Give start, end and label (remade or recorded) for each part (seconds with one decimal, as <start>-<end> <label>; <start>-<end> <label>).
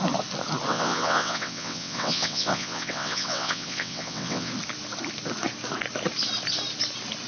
0.0-0.7 recorded; 0.7-4.5 remade; 4.5-7.3 recorded